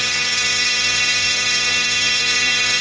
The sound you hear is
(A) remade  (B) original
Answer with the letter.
A